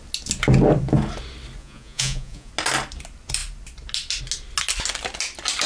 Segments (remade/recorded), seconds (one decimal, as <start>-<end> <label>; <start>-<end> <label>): 0.0-1.6 recorded; 1.6-2.5 remade; 2.5-5.7 recorded